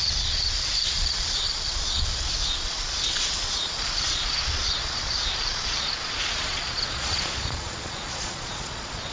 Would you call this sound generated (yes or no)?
yes